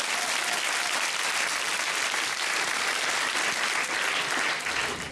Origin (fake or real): real